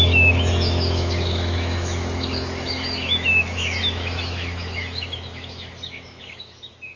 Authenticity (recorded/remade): remade